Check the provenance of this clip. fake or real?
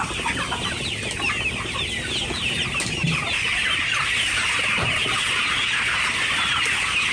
real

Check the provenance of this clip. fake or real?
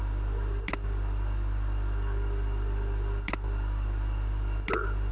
real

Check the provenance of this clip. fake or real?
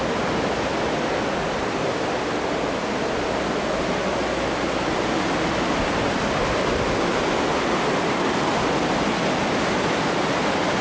real